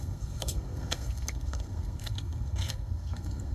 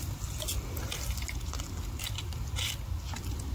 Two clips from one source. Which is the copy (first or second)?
first